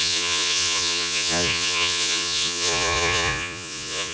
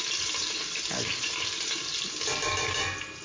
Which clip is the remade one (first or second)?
first